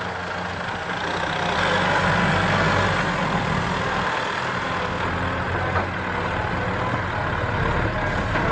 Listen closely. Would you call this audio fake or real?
real